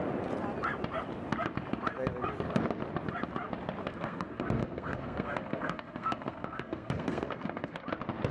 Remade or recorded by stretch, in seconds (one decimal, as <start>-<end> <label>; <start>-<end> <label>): 0.0-3.8 recorded; 3.8-7.8 remade; 7.8-8.3 recorded